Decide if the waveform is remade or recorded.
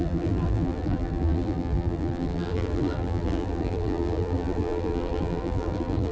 remade